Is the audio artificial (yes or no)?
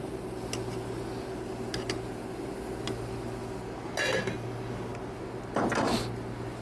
no